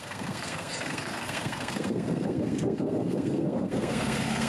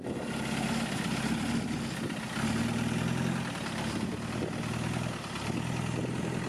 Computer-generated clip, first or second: first